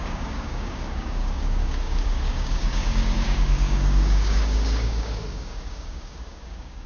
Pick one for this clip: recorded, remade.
remade